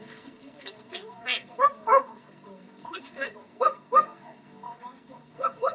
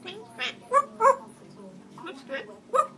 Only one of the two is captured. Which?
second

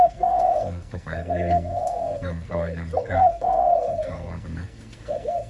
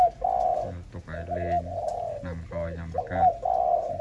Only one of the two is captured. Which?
second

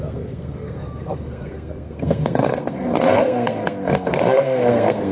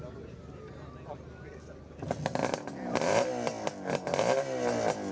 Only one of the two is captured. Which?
second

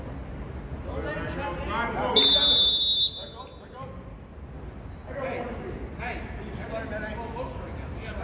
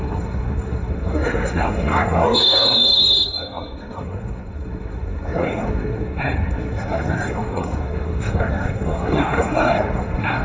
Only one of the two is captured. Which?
first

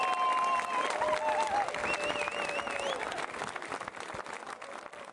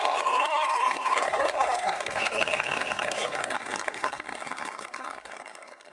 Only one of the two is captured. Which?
first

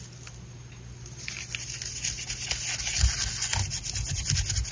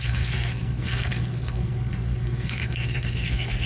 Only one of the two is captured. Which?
first